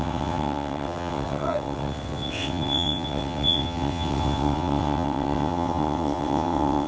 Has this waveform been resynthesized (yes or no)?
yes